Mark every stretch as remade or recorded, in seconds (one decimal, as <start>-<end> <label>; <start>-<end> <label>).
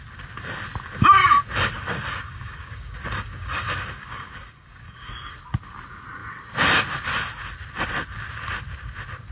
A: 0.0-1.2 recorded; 1.2-5.3 remade; 5.3-9.3 recorded